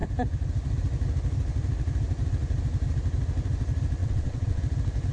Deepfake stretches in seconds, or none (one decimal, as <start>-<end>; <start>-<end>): 4.0-4.6